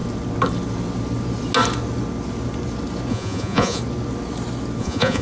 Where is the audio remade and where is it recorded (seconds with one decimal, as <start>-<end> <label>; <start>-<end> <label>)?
0.0-3.1 recorded; 3.1-3.8 remade; 3.8-4.8 recorded; 4.8-5.2 remade